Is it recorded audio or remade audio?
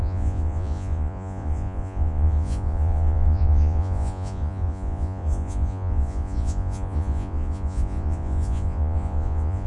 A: remade